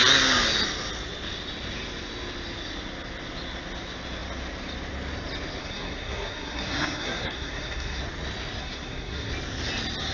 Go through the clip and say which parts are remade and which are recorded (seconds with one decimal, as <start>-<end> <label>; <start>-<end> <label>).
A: 0.0-5.6 recorded; 5.6-8.0 remade; 8.0-8.6 recorded; 8.6-9.3 remade; 9.3-10.1 recorded